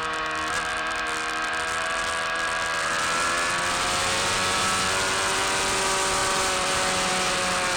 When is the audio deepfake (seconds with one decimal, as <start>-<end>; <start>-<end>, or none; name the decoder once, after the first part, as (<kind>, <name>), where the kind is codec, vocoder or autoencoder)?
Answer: 0.7-4.6 (vocoder, BigVGAN v2); 6.2-7.1